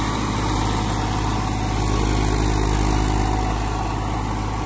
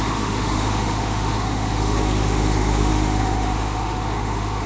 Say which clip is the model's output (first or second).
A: second